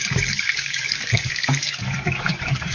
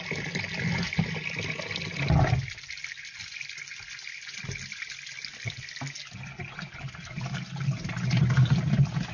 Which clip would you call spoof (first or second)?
first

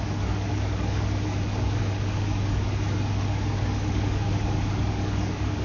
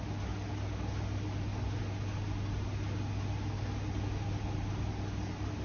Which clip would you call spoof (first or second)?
first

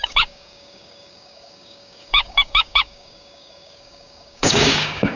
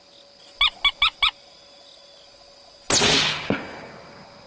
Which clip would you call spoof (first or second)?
first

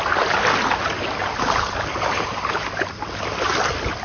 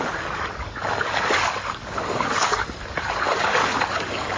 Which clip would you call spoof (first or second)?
second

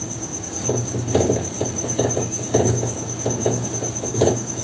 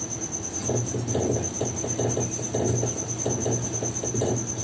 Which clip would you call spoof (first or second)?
first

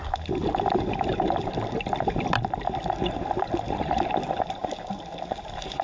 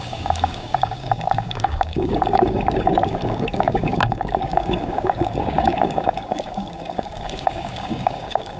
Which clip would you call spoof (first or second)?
second